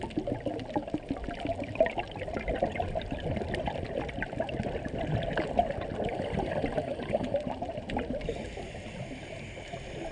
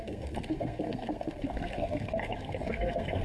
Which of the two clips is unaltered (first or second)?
first